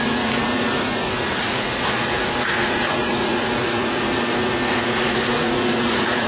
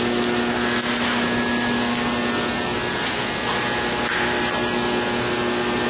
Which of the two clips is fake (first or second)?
first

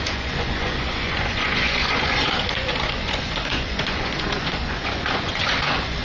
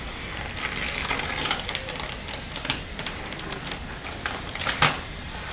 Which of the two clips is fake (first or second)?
first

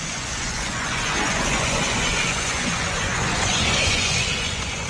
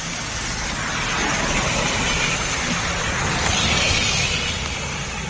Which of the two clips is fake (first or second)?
first